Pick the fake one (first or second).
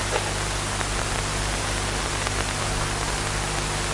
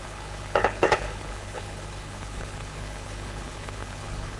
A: second